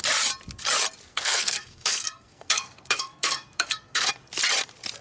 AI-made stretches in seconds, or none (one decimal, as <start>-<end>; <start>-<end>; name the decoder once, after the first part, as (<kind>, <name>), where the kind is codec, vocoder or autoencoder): 1.1-4.1 (codec, SNAC)